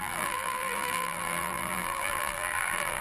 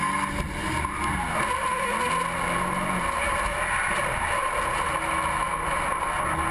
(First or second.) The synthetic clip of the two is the first